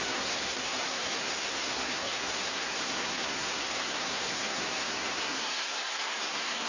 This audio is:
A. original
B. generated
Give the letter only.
B